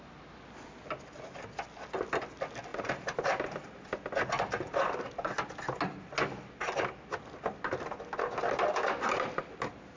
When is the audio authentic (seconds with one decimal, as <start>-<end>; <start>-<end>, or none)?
0.0-2.7; 3.8-10.0

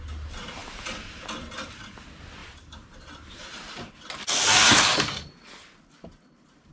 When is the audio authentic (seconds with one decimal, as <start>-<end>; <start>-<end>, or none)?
0.0-0.6; 1.7-2.4; 3.9-6.7

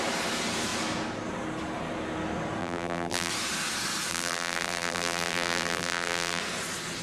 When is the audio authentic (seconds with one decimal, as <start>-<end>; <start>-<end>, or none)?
0.0-2.6; 3.3-4.1; 6.4-7.0

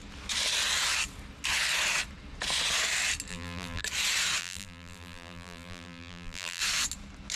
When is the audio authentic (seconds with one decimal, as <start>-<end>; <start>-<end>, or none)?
0.0-3.3; 3.8-4.4; 6.6-7.4

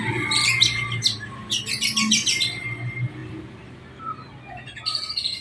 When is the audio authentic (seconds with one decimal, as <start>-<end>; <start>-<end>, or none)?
0.0-3.2; 4.0-5.4

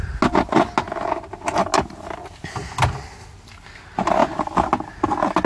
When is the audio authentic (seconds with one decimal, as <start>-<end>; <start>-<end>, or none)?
0.0-5.5

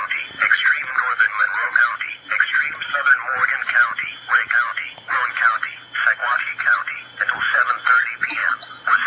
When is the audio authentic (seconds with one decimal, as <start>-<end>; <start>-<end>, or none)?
0.0-6.2; 6.8-9.1